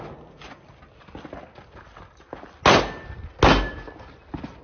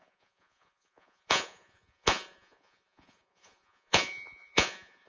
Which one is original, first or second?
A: first